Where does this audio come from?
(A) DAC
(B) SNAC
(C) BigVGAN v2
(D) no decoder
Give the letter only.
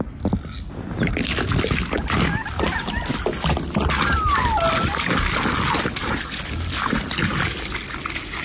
D